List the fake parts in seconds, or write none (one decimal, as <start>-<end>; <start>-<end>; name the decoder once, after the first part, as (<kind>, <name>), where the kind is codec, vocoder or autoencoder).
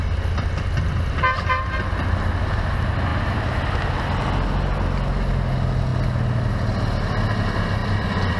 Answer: 7.8-8.4 (vocoder, BigVGAN v2)